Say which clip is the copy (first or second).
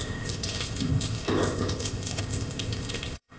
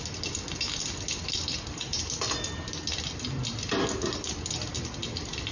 first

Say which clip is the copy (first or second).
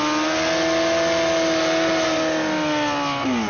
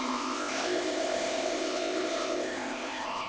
second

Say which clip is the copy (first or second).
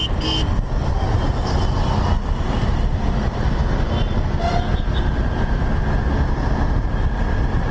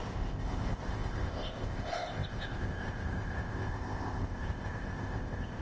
second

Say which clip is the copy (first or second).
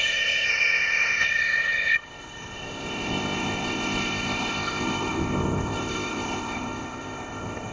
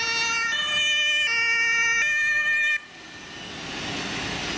first